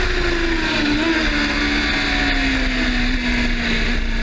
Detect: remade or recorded recorded